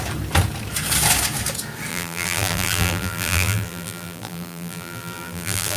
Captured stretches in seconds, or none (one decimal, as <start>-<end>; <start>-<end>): 0.0-1.9